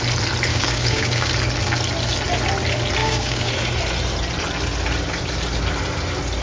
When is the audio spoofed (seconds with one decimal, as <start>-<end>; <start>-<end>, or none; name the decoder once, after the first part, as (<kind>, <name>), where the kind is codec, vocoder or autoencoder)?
0.5-1.3 (codec, DAC); 3.0-3.5